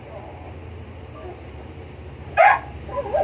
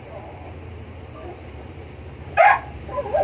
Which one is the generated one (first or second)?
second